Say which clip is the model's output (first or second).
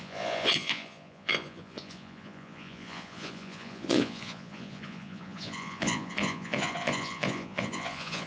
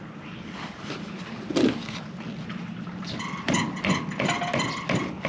first